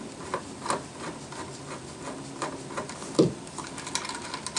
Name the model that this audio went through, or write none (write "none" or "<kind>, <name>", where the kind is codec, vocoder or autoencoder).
none